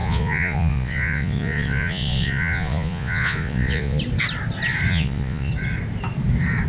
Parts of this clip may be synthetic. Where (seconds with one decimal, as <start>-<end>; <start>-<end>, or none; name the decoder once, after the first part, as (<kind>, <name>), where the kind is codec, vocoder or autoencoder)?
0.0-4.0 (vocoder, Vocos); 4.9-5.5